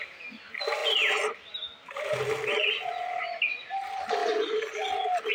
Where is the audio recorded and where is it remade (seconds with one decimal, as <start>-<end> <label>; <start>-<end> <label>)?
0.0-5.3 recorded

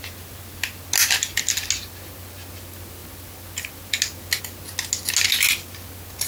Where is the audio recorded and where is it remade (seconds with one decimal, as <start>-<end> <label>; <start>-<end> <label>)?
0.0-6.3 recorded

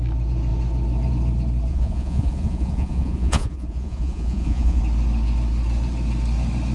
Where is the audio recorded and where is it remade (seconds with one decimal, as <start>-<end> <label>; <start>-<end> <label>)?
0.0-1.7 recorded; 1.7-4.8 remade; 4.8-6.7 recorded

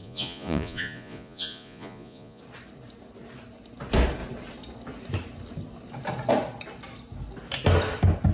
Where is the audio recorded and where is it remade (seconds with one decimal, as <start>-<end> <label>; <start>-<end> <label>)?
0.0-2.4 remade; 2.4-8.3 recorded

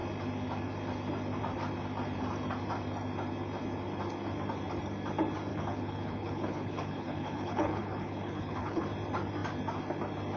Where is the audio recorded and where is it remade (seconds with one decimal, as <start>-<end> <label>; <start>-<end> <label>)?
0.0-5.5 recorded; 5.5-8.8 remade; 8.8-10.4 recorded

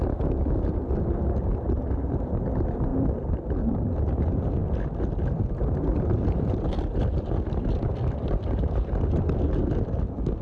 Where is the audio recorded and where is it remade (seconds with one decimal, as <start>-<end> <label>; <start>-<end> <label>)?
0.0-5.9 recorded; 5.9-7.0 remade; 7.0-8.2 recorded; 8.2-8.9 remade; 8.9-10.4 recorded

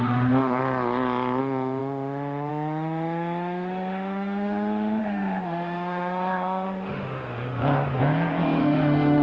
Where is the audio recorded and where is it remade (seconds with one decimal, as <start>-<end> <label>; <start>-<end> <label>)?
0.0-0.6 remade; 0.6-1.4 recorded; 1.4-7.6 remade; 7.6-8.6 recorded; 8.6-9.2 remade

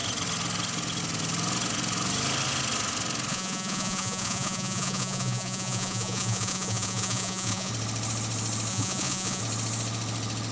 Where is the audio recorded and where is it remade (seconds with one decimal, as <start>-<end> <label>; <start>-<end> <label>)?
0.0-3.3 recorded; 3.3-7.7 remade; 7.7-8.7 recorded; 8.7-9.4 remade; 9.4-10.5 recorded